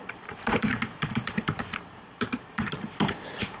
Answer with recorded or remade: remade